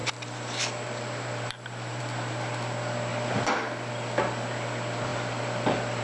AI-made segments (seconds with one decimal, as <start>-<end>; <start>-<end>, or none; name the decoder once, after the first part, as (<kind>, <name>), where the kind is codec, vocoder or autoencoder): 0.0-2.0 (vocoder, BigVGAN v2); 3.1-3.9; 5.1-6.0